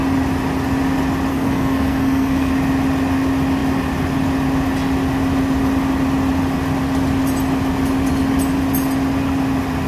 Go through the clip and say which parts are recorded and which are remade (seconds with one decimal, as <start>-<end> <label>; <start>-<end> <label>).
0.0-1.3 recorded; 1.3-2.5 remade; 2.5-9.9 recorded